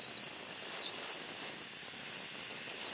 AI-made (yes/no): no